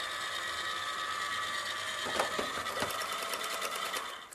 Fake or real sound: real